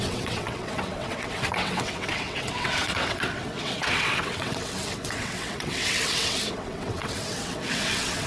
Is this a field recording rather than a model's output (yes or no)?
no